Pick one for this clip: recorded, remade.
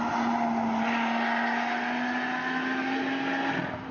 recorded